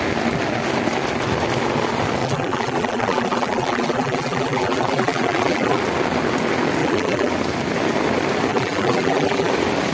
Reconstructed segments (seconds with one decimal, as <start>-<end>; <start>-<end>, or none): 2.2-5.8; 6.8-7.3; 8.5-9.5